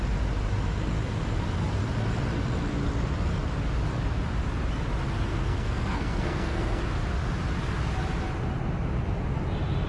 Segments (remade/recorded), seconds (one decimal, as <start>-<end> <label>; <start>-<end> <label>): 0.0-5.3 recorded; 5.3-6.8 remade; 6.8-9.9 recorded